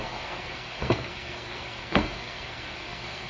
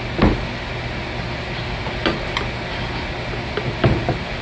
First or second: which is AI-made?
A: first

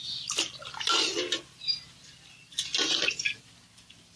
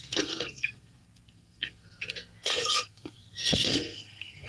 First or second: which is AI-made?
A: second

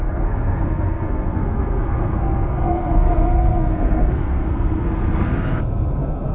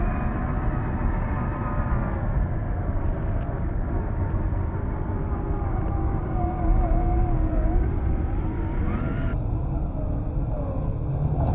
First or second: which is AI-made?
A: first